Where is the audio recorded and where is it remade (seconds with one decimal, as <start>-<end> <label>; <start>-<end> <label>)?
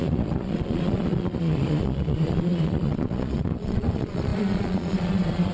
0.0-5.5 remade